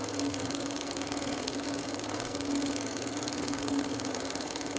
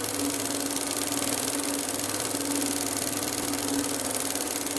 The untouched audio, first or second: second